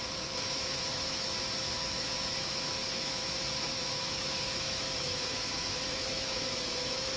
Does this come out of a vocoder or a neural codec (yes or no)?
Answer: yes